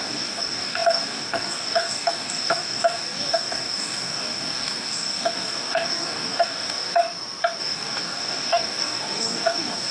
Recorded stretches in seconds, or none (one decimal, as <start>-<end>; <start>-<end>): 7.0-7.6